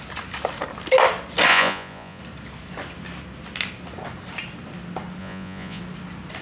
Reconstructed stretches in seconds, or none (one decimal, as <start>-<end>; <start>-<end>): 1.5-2.2; 5.2-5.8